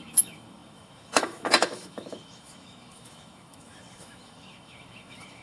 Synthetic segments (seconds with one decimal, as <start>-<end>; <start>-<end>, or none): 0.0-5.4